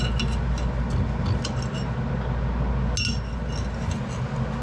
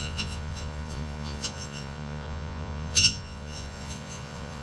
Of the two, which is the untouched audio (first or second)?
first